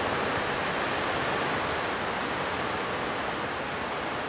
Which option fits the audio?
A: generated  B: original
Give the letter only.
B